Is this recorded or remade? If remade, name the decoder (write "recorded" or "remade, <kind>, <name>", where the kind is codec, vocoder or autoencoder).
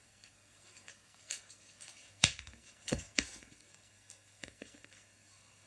remade, codec, SNAC